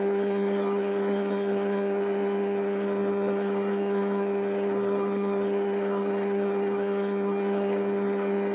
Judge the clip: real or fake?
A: fake